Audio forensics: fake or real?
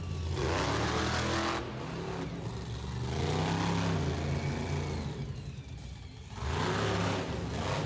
real